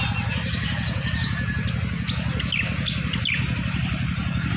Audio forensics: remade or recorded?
recorded